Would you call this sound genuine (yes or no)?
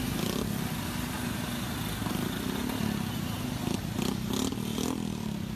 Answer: yes